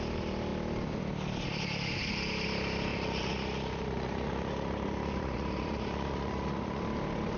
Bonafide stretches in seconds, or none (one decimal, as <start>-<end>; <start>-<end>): 0.0-2.9; 6.8-7.4